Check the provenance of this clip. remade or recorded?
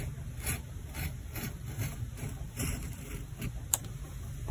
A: remade